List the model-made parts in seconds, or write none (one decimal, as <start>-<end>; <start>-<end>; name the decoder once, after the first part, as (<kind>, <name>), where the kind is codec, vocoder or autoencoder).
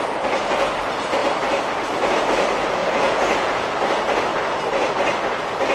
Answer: 2.8-3.7 (vocoder, Vocos)